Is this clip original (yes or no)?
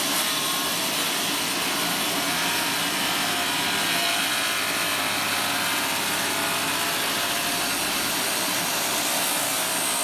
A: yes